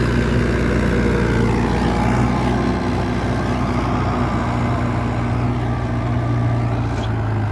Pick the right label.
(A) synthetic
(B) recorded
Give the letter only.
B